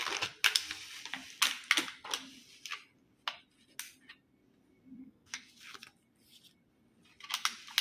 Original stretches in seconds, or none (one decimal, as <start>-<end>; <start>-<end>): 0.0-5.0; 5.5-7.8